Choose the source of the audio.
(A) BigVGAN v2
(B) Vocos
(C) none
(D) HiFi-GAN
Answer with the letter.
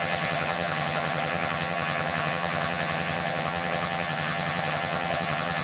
D